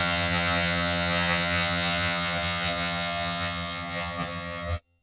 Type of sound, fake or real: fake